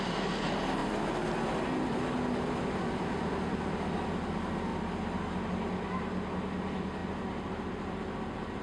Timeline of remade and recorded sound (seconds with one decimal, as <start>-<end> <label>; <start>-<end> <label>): 0.0-8.6 recorded